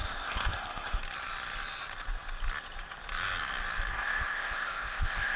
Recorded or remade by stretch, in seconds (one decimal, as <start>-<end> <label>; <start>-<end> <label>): 0.0-1.0 remade; 1.0-3.9 recorded; 3.9-5.4 remade